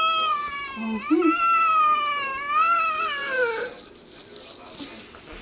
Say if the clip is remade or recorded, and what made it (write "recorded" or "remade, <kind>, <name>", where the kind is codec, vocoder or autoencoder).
recorded